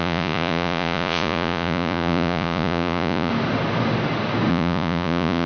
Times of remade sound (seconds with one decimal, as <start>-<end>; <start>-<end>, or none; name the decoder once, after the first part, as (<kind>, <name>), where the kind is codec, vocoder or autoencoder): 0.0-3.3 (vocoder, Vocos); 4.5-5.5